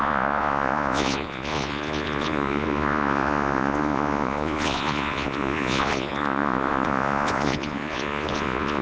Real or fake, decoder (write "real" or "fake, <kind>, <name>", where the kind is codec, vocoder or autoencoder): fake, vocoder, Vocos